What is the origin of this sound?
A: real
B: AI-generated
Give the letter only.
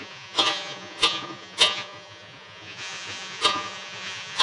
B